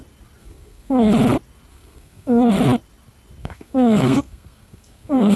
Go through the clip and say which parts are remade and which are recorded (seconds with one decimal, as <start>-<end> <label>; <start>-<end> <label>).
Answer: 0.0-0.4 recorded; 0.4-1.1 remade; 1.1-1.7 recorded; 1.7-2.5 remade; 2.5-3.4 recorded; 3.4-5.4 remade